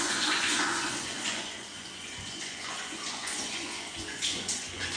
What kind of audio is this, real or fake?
fake